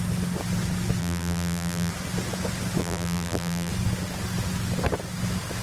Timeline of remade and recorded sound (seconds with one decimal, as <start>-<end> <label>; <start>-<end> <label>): 0.0-1.0 recorded; 1.0-1.9 remade; 1.9-2.8 recorded; 2.8-3.7 remade; 3.7-5.6 recorded